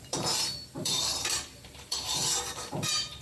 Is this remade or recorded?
remade